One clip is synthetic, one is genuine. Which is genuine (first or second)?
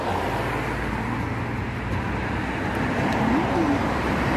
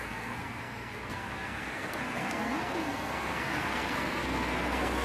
first